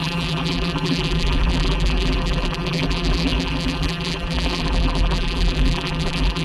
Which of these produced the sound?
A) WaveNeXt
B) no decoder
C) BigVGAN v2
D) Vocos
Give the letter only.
C